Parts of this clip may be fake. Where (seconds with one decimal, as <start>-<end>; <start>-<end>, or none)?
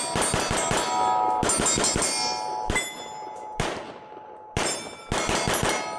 none